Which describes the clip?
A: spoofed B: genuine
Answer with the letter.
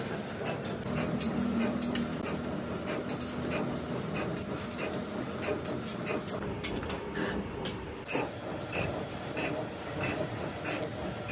B